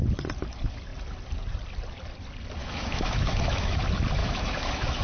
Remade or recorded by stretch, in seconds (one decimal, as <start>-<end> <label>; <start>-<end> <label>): 0.0-2.6 recorded; 2.6-3.8 remade; 3.8-4.2 recorded; 4.2-5.0 remade

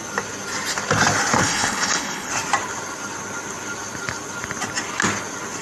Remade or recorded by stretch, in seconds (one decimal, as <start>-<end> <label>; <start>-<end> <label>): 0.0-1.4 recorded; 1.4-2.3 remade; 2.3-5.6 recorded